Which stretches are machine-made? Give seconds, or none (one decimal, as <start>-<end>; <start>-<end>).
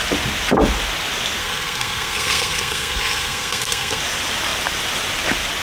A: 1.4-4.0